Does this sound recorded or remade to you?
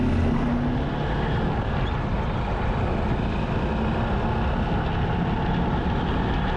recorded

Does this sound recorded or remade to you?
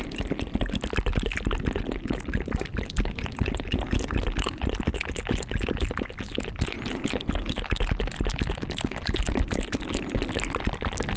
recorded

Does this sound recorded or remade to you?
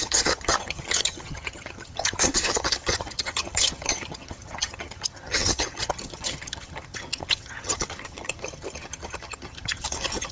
remade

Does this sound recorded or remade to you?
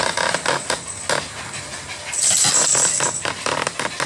recorded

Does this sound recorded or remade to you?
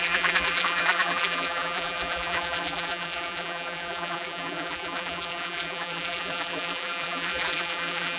remade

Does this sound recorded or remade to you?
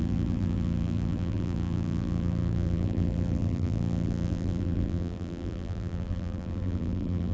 remade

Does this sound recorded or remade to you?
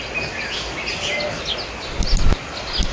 recorded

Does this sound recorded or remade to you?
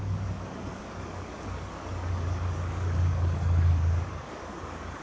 remade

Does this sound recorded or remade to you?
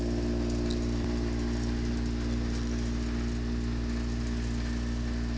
recorded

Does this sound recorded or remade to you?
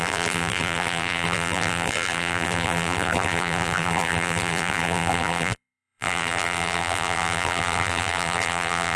remade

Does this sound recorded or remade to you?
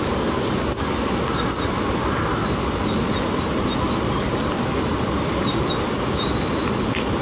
recorded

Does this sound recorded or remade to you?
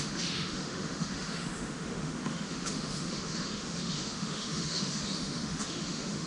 remade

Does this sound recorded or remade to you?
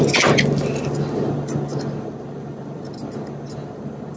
recorded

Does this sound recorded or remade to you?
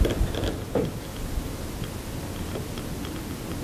recorded